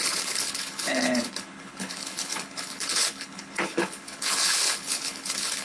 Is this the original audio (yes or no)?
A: no